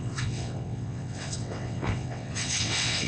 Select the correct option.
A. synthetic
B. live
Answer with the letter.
A